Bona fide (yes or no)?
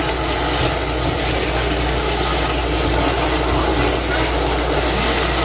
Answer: yes